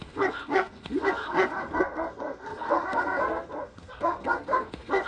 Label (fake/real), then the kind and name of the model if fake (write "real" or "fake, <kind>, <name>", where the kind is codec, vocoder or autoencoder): fake, codec, SNAC